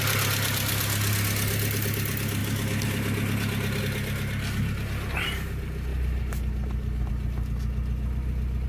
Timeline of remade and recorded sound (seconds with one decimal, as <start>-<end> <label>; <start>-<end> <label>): 0.0-5.9 recorded; 5.9-7.1 remade; 7.1-8.7 recorded